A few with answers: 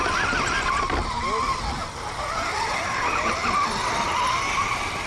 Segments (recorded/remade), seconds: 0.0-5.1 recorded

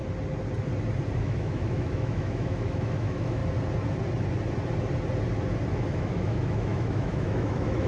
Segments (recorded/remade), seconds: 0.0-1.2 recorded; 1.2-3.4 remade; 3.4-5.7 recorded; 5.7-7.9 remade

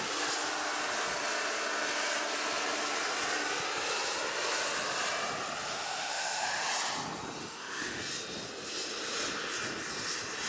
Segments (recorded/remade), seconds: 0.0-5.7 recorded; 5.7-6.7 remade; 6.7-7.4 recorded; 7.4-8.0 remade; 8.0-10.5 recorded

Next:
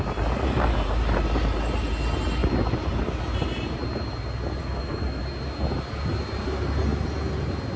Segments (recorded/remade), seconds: 0.0-4.6 recorded; 4.6-5.2 remade; 5.2-7.8 recorded